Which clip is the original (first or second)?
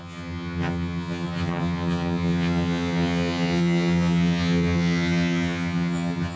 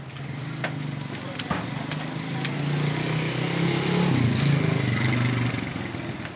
second